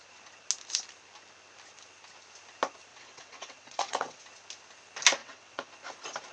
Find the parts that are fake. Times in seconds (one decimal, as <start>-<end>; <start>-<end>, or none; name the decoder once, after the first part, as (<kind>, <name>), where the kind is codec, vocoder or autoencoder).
2.9-4.2 (vocoder, WaveNeXt); 5.2-5.7